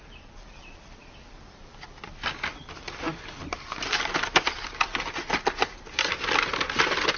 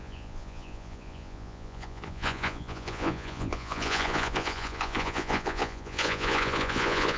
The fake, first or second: second